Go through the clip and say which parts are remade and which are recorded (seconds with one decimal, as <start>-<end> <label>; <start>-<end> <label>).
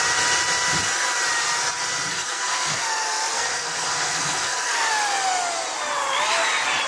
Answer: 0.0-2.1 recorded; 2.1-4.9 remade; 4.9-6.9 recorded